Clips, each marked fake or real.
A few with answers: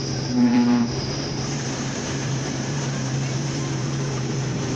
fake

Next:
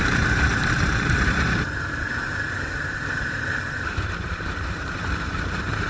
fake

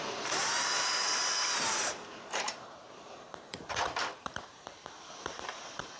fake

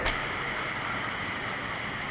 fake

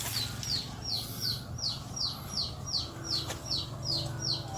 real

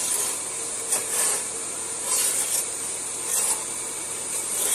fake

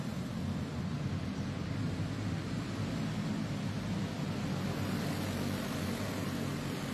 real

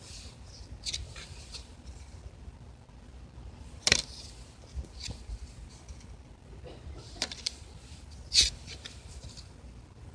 fake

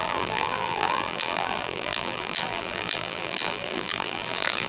fake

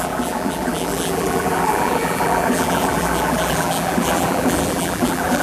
fake